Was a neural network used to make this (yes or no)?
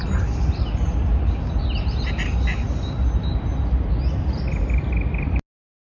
no